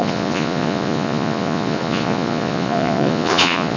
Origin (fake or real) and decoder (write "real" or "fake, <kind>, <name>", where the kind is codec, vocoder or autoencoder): fake, vocoder, Vocos